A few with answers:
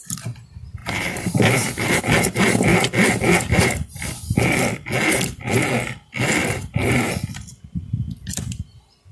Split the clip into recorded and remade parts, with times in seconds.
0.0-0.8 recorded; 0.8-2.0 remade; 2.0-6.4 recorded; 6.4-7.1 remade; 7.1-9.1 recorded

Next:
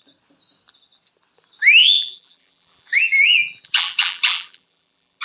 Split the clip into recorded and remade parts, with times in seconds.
0.0-1.8 recorded; 1.8-5.2 remade

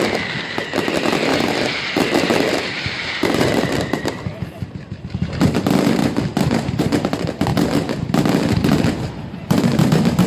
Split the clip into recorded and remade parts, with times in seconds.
0.0-1.3 recorded; 1.3-4.0 remade; 4.0-6.0 recorded; 6.0-6.8 remade; 6.8-7.5 recorded; 7.5-8.1 remade; 8.1-10.3 recorded

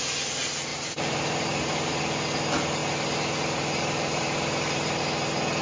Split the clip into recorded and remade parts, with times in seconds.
0.0-0.7 recorded; 0.7-2.0 remade; 2.0-2.8 recorded; 2.8-5.0 remade; 5.0-5.6 recorded

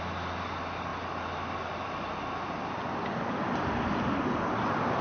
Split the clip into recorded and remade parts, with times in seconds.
0.0-5.0 recorded

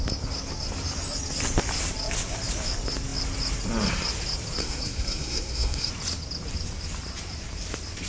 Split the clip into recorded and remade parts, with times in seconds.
0.0-4.6 recorded; 4.6-5.9 remade; 5.9-8.1 recorded